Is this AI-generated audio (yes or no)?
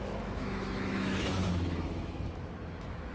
yes